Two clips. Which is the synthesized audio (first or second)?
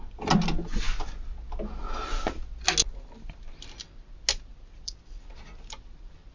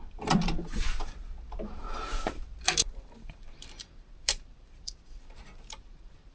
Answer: second